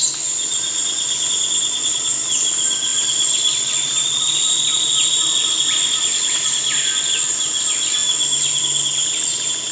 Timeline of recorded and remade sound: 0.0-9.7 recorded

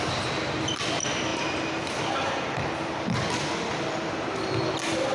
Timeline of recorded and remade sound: 0.0-5.1 recorded

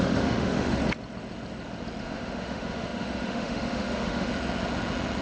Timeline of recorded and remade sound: 0.0-0.8 remade; 0.8-2.0 recorded; 2.0-4.3 remade; 4.3-5.2 recorded

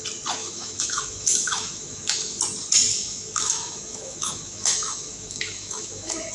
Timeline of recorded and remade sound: 0.0-0.4 recorded; 0.4-2.4 remade; 2.4-2.9 recorded; 2.9-6.3 remade

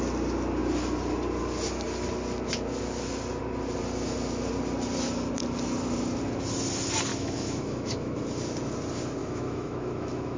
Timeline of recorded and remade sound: 0.0-7.1 recorded; 7.1-8.2 remade; 8.2-9.2 recorded; 9.2-10.4 remade

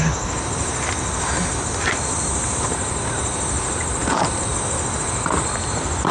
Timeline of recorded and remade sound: 0.0-6.1 recorded